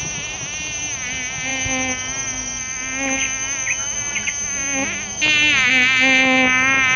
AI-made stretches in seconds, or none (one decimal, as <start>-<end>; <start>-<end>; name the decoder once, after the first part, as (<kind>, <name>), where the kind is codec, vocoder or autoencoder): none